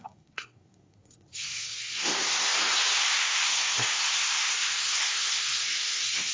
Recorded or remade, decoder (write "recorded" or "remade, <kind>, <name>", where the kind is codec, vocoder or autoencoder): remade, codec, SNAC